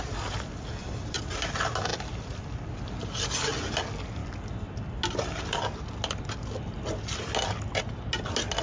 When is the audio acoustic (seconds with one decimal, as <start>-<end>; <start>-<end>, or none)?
0.0-0.8; 1.3-8.6